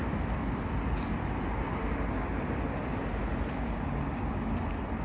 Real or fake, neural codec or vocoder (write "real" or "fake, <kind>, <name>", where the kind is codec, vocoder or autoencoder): real